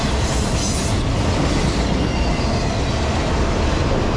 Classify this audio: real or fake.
real